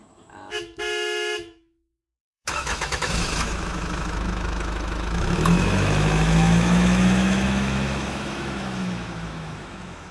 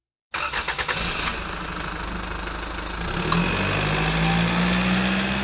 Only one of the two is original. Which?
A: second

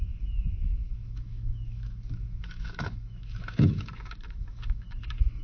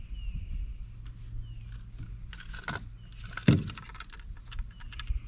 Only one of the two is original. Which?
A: second